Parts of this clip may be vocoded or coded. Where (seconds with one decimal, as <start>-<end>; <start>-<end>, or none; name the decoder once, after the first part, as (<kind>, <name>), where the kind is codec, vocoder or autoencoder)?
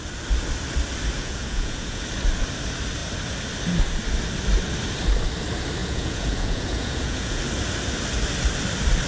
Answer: 1.2-2.0 (vocoder, Vocos); 5.8-7.4